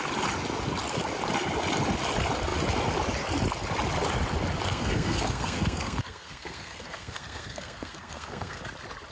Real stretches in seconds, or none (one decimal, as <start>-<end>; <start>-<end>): 0.0-4.7; 8.6-9.1